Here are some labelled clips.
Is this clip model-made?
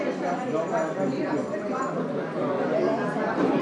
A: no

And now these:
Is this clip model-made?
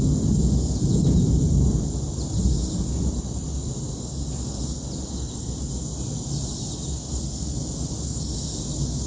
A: no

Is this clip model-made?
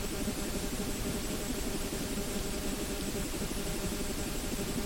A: yes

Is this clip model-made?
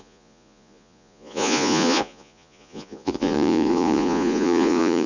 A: yes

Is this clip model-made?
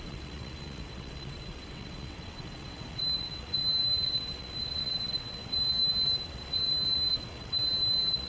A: yes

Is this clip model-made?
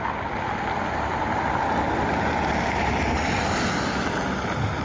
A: no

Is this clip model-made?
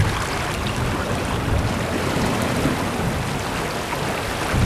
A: no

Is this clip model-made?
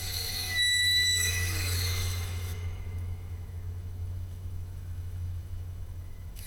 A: yes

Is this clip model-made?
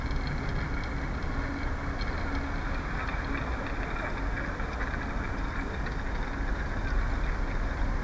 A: no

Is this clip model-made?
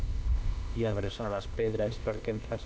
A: yes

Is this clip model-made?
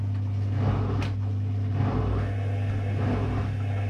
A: no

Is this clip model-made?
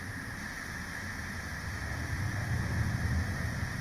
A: no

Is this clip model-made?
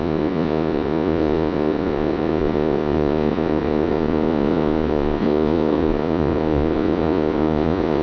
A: yes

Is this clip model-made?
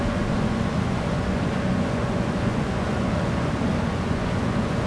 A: yes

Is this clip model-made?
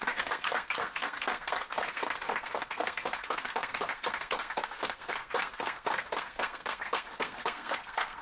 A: yes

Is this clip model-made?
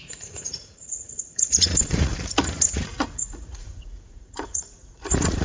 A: yes